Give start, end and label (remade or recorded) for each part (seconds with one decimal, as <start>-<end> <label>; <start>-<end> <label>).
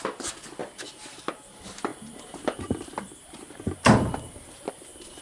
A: 0.0-1.9 recorded; 1.9-3.6 remade; 3.6-5.2 recorded